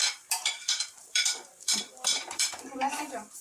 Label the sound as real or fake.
fake